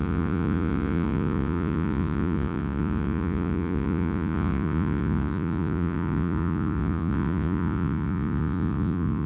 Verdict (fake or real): fake